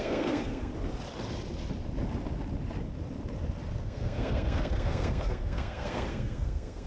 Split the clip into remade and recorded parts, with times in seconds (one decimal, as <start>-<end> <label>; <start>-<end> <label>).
0.0-0.7 remade; 0.7-3.8 recorded; 3.8-6.9 remade